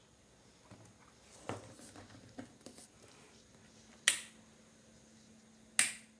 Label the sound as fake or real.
real